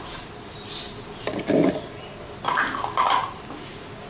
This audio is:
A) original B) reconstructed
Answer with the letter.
A